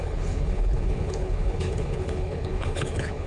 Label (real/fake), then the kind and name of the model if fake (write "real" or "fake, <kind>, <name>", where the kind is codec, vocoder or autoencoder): fake, codec, HILCodec